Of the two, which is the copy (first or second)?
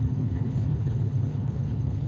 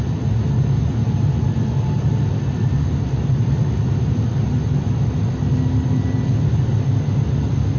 first